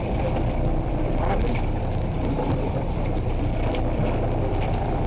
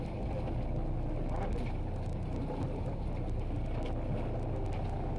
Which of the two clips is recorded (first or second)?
second